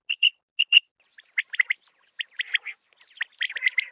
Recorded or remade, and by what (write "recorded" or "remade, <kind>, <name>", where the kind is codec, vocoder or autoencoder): recorded